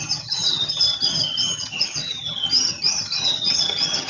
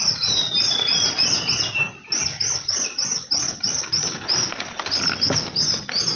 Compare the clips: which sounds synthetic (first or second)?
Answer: first